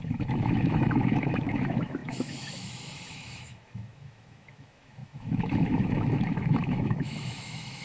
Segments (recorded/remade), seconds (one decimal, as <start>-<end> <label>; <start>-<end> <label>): 0.0-7.8 remade